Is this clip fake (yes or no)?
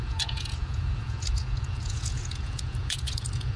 yes